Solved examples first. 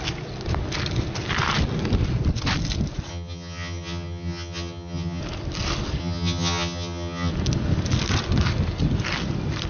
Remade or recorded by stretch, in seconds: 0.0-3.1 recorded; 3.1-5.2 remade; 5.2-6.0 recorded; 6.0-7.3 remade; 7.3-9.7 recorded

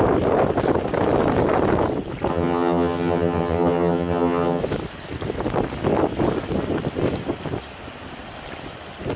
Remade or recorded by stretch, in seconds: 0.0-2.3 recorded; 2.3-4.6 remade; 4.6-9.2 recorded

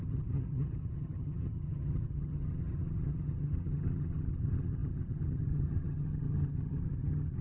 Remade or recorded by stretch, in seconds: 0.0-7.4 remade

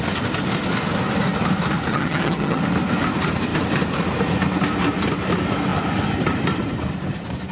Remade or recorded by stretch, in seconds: 0.0-1.9 recorded; 1.9-2.6 remade; 2.6-7.5 recorded

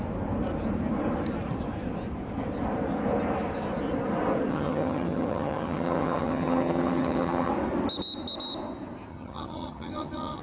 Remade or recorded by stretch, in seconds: 0.0-4.5 recorded; 4.5-7.5 remade; 7.5-9.1 recorded; 9.1-10.4 remade